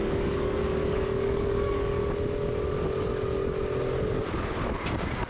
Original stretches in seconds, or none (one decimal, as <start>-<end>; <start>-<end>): 2.0-5.3